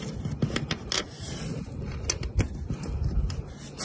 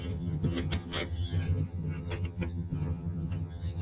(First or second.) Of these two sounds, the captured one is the first